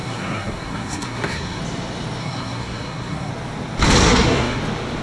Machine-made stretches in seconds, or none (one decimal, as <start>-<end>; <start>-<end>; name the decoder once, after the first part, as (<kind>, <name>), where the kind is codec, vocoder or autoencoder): 0.0-1.6 (codec, SNAC); 2.2-3.3; 4.0-4.6